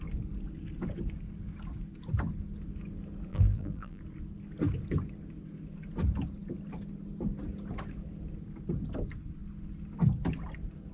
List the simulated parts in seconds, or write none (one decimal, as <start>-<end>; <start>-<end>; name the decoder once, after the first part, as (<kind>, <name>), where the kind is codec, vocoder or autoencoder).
3.3-4.0 (vocoder, BigVGAN v2)